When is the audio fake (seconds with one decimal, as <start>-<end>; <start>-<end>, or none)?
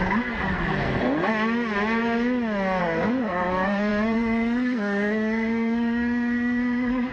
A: 0.0-1.3; 2.8-7.1